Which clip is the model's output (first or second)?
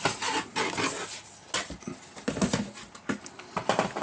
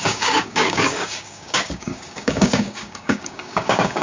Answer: second